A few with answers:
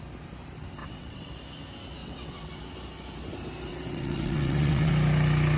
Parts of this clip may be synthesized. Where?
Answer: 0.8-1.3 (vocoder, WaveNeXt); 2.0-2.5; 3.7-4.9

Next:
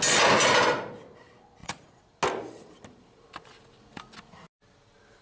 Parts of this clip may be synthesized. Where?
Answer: 1.6-2.1 (vocoder, Vocos)

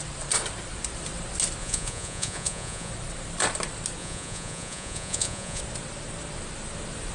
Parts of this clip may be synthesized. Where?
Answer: 1.6-2.9 (vocoder, Vocos); 4.0-5.6

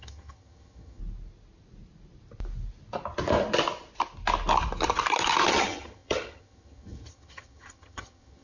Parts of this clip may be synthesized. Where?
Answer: 0.0-1.0 (vocoder, HiFi-GAN); 5.5-8.4

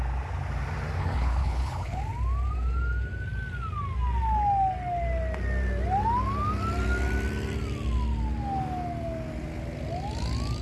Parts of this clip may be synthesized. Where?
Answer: 1.0-2.0 (codec, HILCodec)

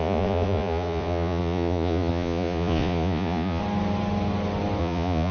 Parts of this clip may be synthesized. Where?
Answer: 0.0-3.6 (vocoder, Vocos); 4.8-5.3

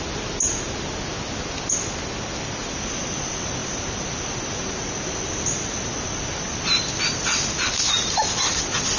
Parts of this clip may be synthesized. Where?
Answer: none